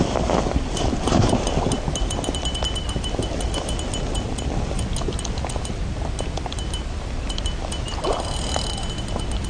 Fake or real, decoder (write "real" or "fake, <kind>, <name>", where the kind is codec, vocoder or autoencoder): real